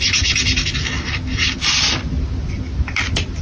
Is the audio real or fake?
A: real